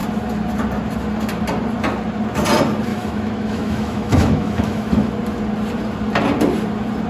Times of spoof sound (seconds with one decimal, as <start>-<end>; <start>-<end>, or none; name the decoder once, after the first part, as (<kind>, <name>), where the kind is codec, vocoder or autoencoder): 2.9-5.1 (autoencoder, DAC-VAE)